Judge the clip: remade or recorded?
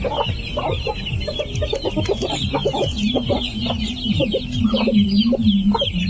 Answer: recorded